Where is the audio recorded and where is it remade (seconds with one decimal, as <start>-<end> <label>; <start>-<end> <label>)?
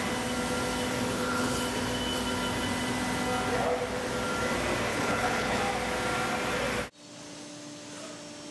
0.0-1.1 recorded; 1.1-1.6 remade; 1.6-4.9 recorded; 4.9-5.6 remade; 5.6-8.5 recorded